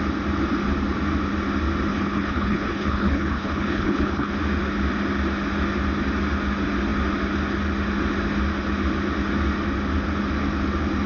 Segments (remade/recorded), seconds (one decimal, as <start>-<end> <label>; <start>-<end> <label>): 0.0-1.9 recorded; 1.9-4.3 remade; 4.3-11.1 recorded